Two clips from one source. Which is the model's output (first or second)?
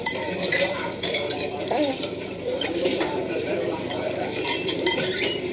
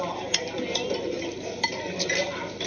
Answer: first